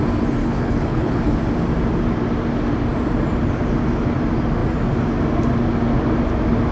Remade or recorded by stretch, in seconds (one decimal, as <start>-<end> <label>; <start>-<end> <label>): 0.0-0.4 recorded; 0.4-1.4 remade; 1.4-6.7 recorded